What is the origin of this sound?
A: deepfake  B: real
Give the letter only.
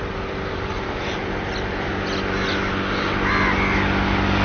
B